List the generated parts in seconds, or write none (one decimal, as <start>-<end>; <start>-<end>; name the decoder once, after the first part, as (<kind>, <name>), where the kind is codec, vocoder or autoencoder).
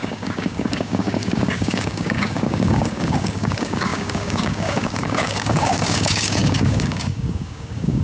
0.0-8.0 (codec, DAC)